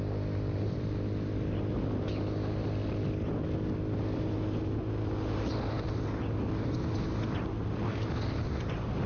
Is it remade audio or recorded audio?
recorded